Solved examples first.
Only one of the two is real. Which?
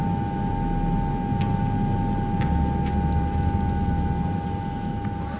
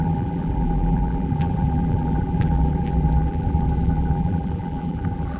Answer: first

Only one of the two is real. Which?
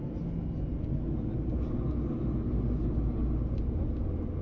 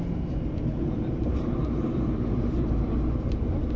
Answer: first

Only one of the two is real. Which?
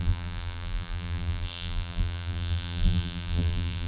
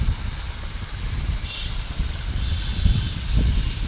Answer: second